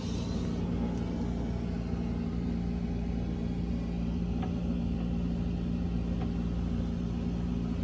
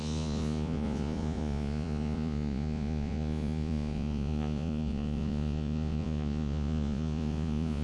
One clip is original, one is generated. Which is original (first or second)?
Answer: first